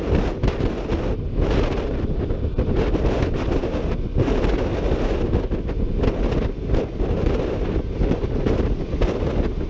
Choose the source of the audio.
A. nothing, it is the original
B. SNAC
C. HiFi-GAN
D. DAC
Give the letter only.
A